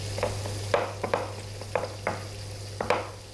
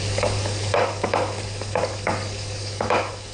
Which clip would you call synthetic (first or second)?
second